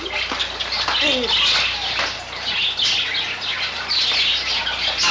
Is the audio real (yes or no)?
yes